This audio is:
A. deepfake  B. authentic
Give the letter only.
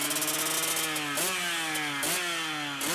B